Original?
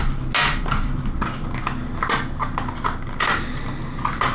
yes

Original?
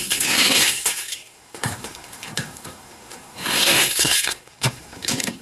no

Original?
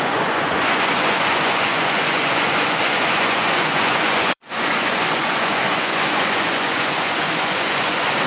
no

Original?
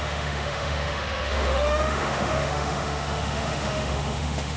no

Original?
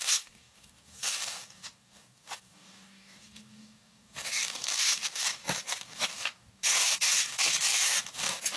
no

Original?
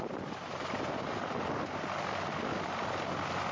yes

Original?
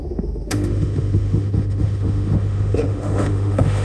no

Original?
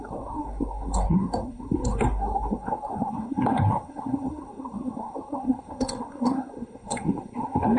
no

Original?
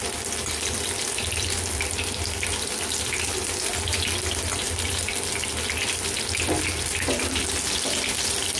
yes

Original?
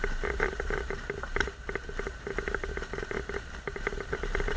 no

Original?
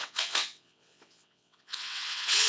no